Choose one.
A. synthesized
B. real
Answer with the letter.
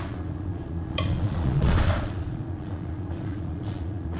A